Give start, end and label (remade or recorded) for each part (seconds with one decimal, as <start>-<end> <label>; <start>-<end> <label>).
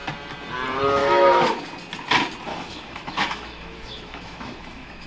0.0-1.0 recorded; 1.0-1.6 remade; 1.6-2.5 recorded; 2.5-5.1 remade